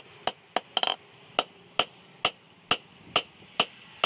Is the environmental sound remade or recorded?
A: recorded